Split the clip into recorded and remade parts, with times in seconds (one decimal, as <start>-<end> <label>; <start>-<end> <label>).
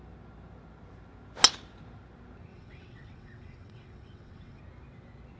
0.0-2.5 recorded; 2.5-4.6 remade; 4.6-5.4 recorded